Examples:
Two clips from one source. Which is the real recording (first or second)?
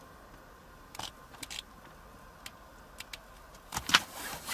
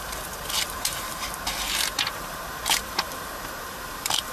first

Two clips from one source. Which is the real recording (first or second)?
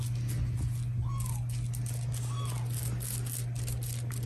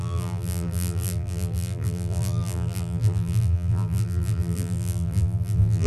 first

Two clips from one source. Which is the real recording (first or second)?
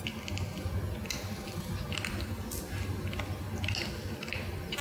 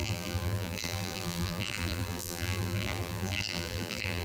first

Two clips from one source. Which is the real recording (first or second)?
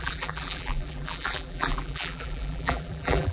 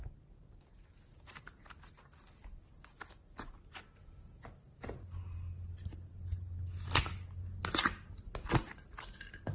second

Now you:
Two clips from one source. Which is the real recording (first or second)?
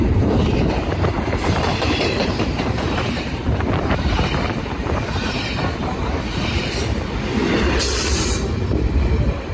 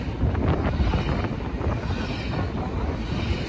second